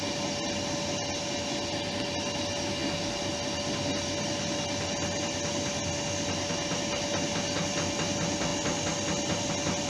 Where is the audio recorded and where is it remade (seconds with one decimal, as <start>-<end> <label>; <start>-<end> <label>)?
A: 0.0-9.9 recorded